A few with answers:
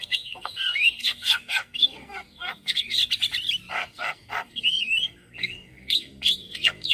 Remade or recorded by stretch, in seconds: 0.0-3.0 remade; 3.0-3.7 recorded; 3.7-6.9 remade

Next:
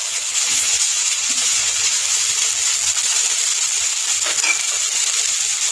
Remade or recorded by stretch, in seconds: 0.0-2.1 remade; 2.1-5.7 recorded